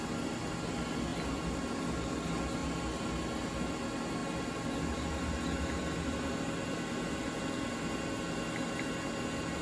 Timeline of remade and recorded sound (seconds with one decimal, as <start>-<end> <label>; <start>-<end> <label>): 0.0-9.6 recorded

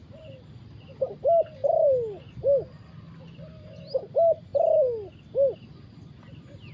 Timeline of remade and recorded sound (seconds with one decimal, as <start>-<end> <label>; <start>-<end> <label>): 0.0-6.7 recorded

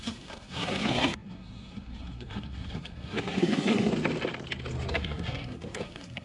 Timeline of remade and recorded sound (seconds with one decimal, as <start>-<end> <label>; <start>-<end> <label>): 0.0-3.9 remade; 3.9-4.9 recorded; 4.9-6.2 remade